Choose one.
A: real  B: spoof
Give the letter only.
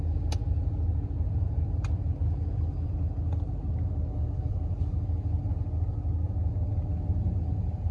A